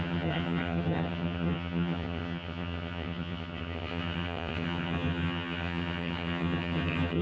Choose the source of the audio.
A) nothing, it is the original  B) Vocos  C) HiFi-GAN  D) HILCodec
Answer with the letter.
C